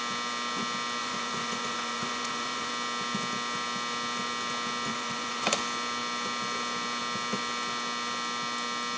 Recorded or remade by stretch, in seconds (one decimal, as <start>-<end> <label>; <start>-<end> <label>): 0.0-1.0 recorded; 1.0-2.7 remade; 2.7-4.9 recorded; 4.9-5.6 remade; 5.6-9.0 recorded